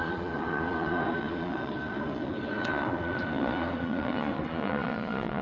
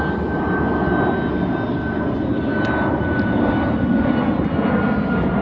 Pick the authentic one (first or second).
second